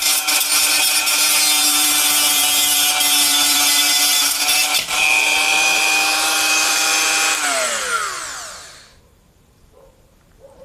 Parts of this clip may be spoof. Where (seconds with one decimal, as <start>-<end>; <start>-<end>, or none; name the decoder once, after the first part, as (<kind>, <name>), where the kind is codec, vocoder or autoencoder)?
0.0-6.9 (vocoder, BigVGAN v2); 9.0-10.6